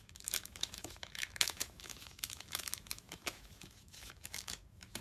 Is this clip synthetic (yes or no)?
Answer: yes